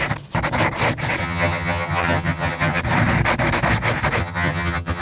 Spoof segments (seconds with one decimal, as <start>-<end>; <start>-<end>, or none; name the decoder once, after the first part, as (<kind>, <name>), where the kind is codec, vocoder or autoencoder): 1.2-2.8 (vocoder, HiFi-GAN); 4.2-5.0